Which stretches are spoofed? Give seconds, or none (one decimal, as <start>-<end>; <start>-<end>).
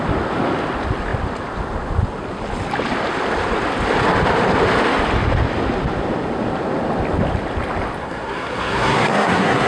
8.0-9.7